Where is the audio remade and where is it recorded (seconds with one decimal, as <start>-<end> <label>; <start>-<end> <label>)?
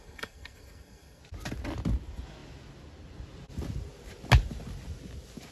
0.0-1.2 remade; 1.2-5.5 recorded